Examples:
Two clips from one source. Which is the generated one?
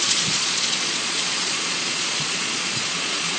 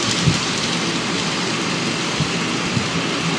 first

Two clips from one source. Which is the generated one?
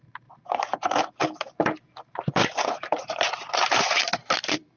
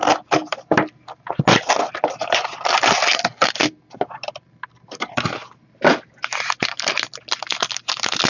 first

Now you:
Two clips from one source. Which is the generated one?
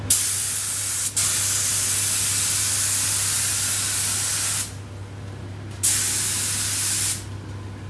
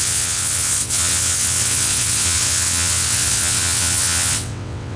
second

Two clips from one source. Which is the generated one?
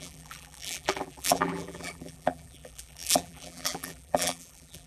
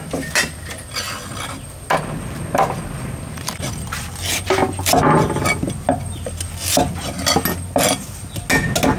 first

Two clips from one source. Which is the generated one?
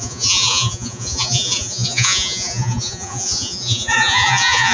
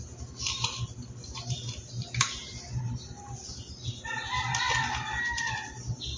first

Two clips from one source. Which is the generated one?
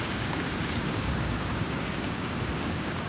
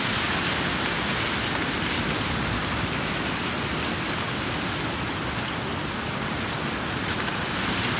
first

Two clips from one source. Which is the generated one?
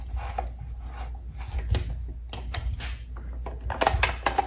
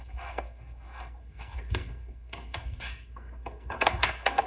second